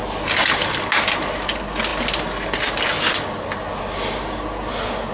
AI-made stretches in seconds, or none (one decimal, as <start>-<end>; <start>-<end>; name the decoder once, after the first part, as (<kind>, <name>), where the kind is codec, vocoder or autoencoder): none